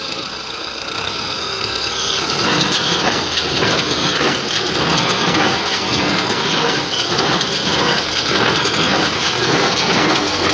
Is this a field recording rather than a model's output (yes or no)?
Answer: no